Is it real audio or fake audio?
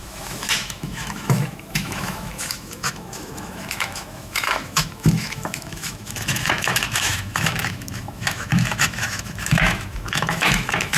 fake